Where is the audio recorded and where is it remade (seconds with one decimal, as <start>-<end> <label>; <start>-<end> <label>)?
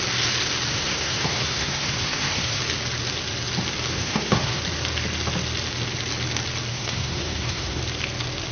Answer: 0.0-0.7 recorded; 0.7-2.6 remade; 2.6-3.9 recorded; 3.9-4.6 remade; 4.6-6.7 recorded; 6.7-7.8 remade; 7.8-8.5 recorded